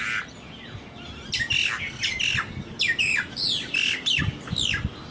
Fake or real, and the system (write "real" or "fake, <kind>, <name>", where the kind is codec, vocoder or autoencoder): real